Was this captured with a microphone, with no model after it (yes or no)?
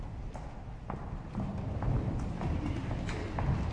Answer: yes